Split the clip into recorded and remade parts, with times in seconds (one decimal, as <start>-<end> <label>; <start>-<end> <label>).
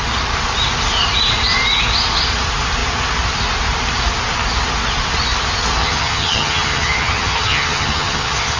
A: 0.0-5.8 recorded; 5.8-8.6 remade